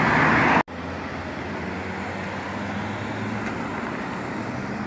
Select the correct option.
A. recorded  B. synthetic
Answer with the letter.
A